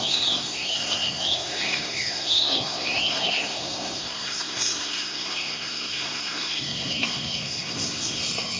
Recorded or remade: remade